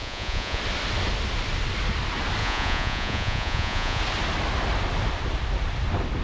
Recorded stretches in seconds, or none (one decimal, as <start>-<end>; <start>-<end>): 0.6-2.4; 4.0-6.2